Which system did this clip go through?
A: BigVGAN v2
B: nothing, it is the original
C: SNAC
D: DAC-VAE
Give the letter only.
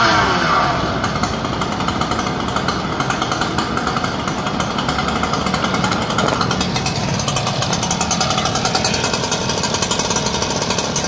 B